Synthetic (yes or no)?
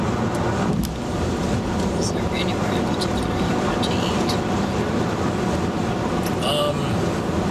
no